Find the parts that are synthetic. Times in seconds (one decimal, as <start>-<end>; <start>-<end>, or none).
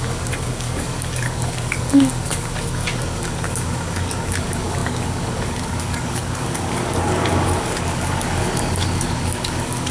0.0-9.9